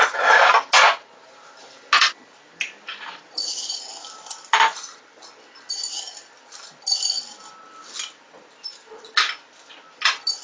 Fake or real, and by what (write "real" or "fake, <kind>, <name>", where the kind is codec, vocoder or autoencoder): real